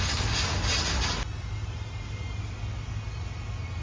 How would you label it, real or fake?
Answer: real